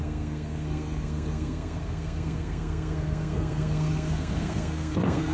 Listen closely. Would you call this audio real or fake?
fake